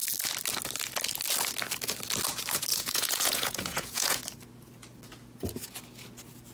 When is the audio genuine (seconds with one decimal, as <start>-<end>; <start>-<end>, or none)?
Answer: 0.0-2.7; 4.2-6.5